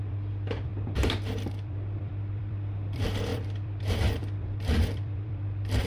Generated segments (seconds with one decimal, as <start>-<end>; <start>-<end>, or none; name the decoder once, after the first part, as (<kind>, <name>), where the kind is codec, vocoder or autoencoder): 0.0-5.9 (vocoder, BigVGAN v2)